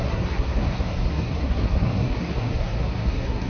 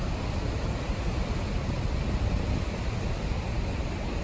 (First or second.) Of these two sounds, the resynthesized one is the first